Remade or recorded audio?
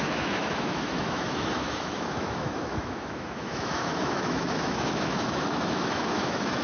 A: remade